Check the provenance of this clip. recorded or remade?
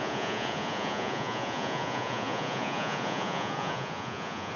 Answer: remade